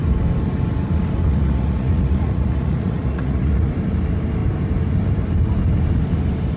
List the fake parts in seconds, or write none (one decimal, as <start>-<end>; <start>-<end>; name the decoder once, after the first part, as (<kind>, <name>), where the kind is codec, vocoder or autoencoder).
1.2-3.7 (vocoder, Vocos)